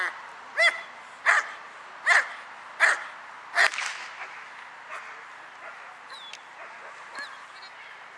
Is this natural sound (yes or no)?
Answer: yes